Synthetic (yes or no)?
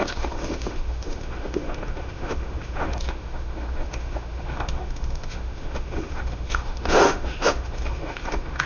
yes